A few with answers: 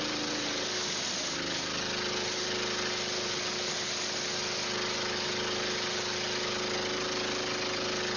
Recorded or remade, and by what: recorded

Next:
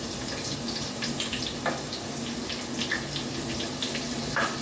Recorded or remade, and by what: recorded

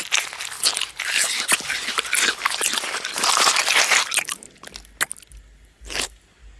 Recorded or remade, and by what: recorded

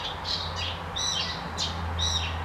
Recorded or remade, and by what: recorded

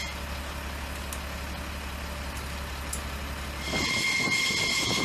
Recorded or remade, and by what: recorded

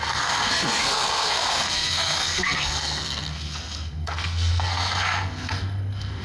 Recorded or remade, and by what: remade, codec, SNAC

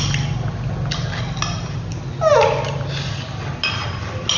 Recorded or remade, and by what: recorded